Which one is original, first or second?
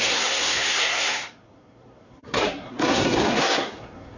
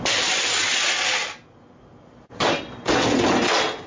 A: second